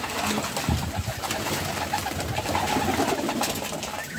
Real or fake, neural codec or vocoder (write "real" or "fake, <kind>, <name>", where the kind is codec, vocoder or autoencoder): real